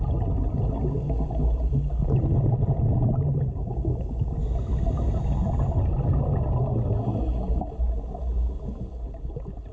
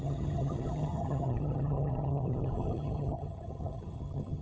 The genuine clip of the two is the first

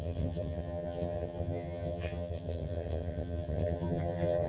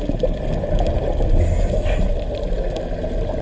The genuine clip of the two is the second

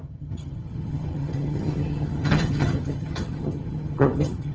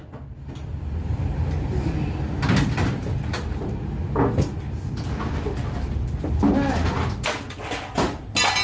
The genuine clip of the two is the second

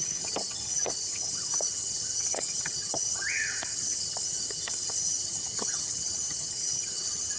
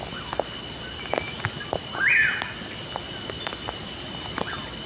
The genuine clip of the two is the second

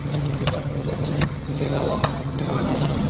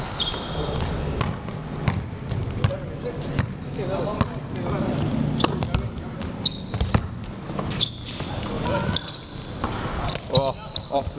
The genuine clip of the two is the second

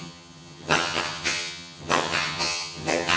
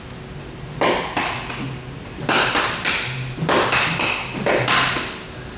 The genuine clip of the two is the second